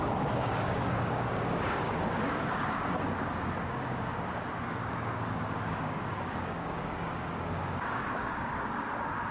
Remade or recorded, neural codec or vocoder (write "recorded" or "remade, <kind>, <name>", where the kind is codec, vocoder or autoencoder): remade, codec, DAC